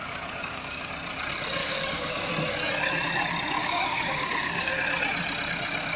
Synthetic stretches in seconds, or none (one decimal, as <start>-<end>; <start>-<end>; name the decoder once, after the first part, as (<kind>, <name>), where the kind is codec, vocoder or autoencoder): 0.4-0.9 (codec, DAC); 1.6-2.3; 3.6-4.7